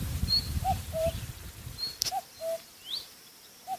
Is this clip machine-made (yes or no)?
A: yes